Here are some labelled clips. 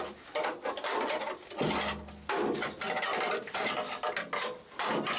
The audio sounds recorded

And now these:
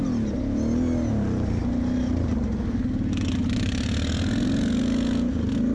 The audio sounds recorded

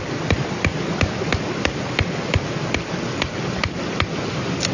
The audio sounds recorded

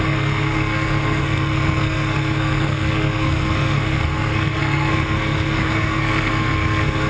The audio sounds remade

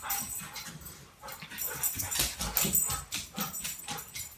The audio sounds recorded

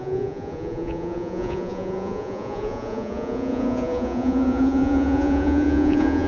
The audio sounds remade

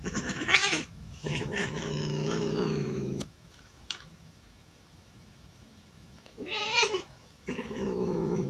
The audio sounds remade